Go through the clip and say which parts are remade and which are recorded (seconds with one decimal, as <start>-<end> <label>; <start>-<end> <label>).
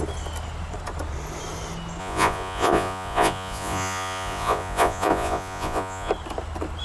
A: 0.0-2.0 recorded; 2.0-6.1 remade; 6.1-6.8 recorded